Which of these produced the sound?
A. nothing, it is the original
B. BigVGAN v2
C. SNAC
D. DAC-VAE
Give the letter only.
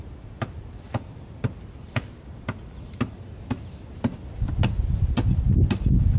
A